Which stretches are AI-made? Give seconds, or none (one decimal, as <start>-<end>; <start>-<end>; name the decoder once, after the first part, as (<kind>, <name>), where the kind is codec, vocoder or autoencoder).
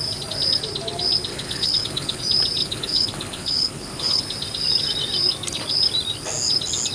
1.3-2.2 (codec, HILCodec); 2.6-4.2